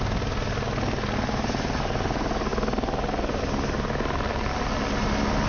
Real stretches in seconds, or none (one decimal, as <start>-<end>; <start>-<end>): 0.0-5.5